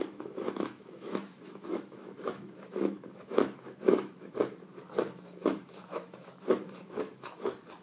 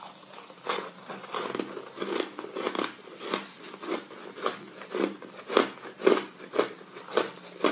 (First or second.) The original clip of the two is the second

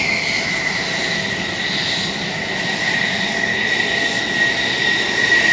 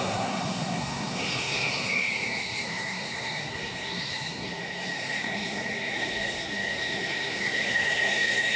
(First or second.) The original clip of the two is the first